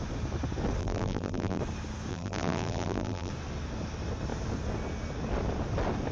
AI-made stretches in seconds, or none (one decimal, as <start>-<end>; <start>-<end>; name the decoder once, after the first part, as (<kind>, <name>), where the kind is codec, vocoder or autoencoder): 0.8-1.6 (vocoder, BigVGAN v2); 2.1-3.3